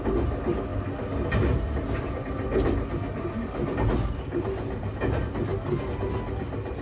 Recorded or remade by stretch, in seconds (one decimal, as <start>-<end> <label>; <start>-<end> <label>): 0.0-6.8 recorded